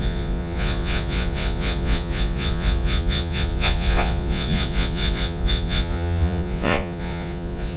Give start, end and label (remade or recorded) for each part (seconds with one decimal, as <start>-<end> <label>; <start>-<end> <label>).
0.0-7.8 remade